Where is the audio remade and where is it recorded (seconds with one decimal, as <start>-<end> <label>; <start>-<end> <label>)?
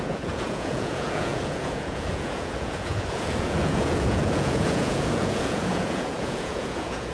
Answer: 0.0-7.1 remade